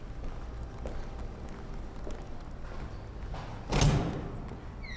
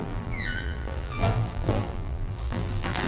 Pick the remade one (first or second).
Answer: second